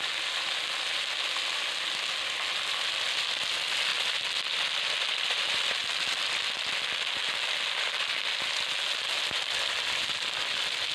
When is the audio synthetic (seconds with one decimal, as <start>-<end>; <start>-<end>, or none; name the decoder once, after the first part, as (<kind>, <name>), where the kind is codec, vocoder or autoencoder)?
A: none